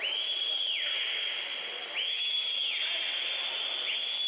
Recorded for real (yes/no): yes